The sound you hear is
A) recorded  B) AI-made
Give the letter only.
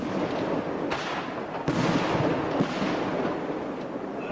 A